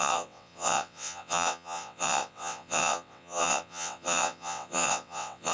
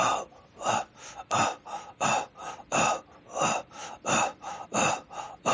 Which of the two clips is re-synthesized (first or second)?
first